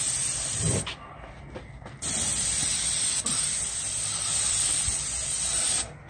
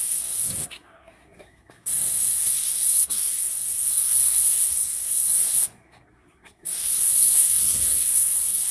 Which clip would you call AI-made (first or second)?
second